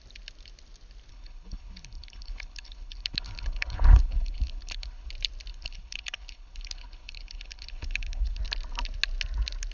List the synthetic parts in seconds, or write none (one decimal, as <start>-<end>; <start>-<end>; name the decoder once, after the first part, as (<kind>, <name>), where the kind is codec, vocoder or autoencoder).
1.1-5.1 (codec, HILCodec); 5.5-8.4